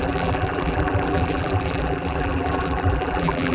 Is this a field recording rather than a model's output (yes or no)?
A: no